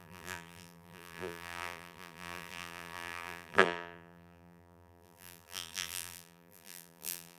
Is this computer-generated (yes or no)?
yes